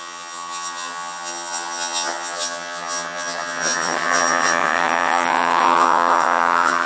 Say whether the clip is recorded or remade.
remade